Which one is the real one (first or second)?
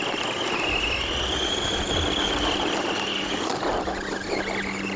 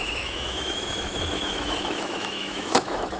first